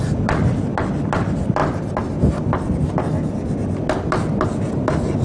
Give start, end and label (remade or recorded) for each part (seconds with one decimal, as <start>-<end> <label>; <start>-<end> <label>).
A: 0.0-5.2 recorded